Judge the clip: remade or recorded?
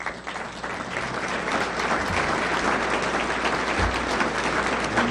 recorded